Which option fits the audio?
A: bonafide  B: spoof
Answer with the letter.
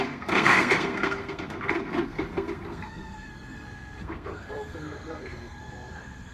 B